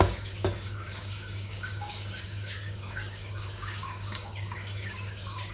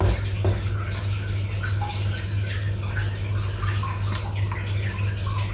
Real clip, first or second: second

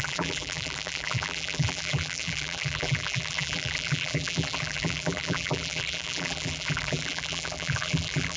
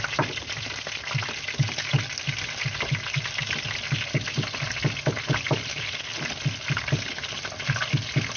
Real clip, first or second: second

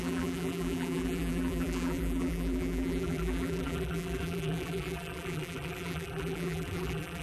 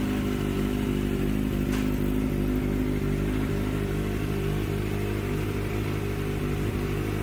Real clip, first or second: second